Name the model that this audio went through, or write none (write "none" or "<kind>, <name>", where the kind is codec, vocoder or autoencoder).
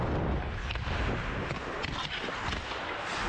none